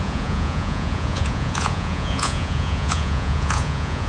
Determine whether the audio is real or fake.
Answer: fake